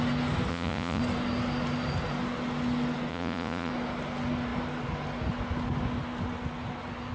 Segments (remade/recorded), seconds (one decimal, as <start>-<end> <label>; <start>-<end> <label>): 0.0-0.5 recorded; 0.5-1.0 remade; 1.0-3.1 recorded; 3.1-3.7 remade; 3.7-7.1 recorded